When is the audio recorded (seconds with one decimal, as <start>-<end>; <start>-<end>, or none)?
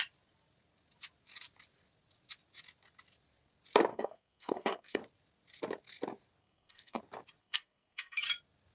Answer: 0.0-3.9; 5.0-6.4; 7.0-7.4; 8.2-8.7